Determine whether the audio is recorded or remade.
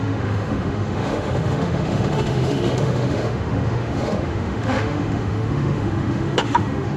remade